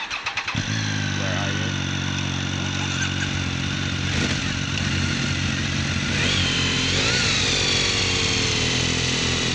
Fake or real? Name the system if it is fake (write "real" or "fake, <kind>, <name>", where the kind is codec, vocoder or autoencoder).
real